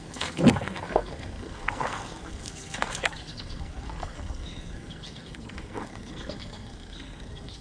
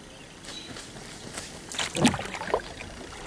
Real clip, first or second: second